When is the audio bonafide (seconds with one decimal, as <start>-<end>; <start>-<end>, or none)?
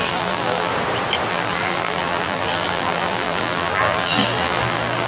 0.7-1.3